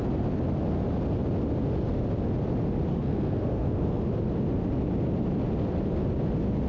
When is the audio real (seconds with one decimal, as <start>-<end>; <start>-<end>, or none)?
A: 0.0-2.9; 4.0-6.7